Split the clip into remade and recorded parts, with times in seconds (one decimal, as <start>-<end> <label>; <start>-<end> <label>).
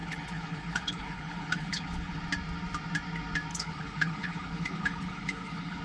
0.0-2.2 remade; 2.2-3.5 recorded; 3.5-5.8 remade